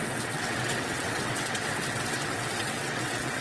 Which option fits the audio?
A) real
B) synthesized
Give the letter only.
B